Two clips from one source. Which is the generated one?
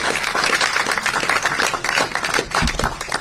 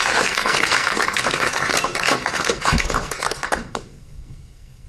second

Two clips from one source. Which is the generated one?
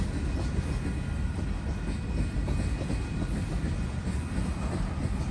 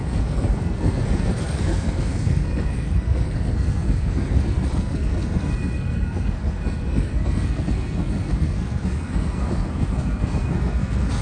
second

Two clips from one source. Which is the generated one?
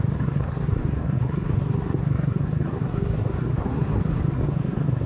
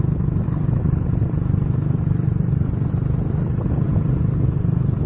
first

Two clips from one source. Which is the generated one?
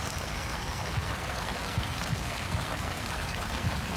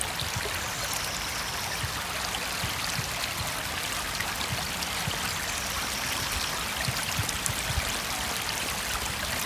first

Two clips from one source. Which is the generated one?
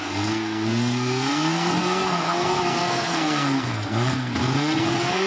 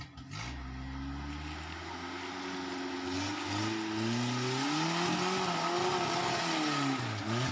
first